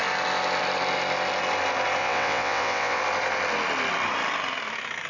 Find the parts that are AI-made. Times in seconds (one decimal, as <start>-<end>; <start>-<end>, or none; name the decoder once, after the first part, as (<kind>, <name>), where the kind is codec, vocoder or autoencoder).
2.0-3.0 (vocoder, WaveNeXt)